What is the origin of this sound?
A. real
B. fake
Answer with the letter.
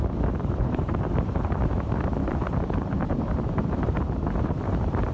B